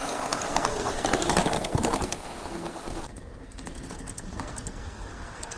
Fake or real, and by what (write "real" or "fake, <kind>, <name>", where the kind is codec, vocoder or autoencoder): fake, codec, SNAC